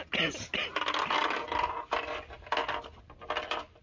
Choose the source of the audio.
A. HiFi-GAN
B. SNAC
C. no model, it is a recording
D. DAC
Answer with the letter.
C